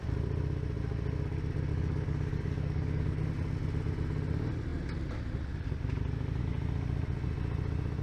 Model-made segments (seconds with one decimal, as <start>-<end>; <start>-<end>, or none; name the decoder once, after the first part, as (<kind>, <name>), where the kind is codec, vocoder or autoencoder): 1.7-3.2 (codec, DAC)